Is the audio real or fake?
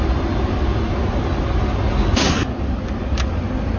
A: real